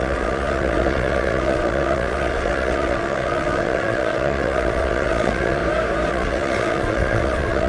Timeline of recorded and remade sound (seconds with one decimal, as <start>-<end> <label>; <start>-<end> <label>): 0.0-5.6 remade; 5.6-6.1 recorded; 6.1-7.7 remade